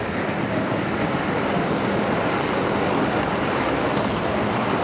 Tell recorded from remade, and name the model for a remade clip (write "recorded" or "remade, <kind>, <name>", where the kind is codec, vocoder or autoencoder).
remade, vocoder, BigVGAN v2